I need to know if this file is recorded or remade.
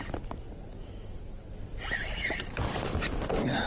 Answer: recorded